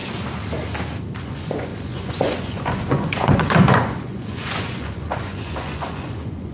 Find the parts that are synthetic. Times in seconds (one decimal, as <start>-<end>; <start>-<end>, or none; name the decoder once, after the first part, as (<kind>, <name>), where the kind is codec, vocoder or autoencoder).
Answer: 1.2-6.5 (vocoder, Vocos)